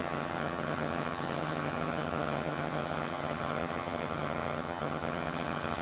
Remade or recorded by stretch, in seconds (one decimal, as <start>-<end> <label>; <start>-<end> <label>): 0.0-5.8 remade